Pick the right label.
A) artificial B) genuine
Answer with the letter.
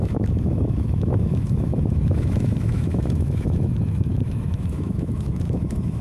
A